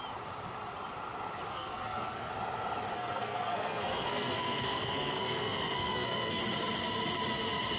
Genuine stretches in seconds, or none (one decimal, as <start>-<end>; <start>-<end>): 0.0-1.5; 2.3-2.9; 6.4-7.8